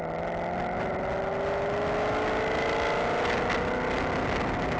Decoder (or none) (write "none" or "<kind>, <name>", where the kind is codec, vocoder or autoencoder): none